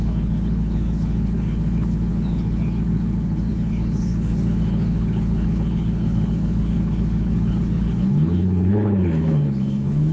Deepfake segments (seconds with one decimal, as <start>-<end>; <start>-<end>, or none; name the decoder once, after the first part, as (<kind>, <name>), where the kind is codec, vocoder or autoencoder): 0.0-10.1 (codec, HILCodec)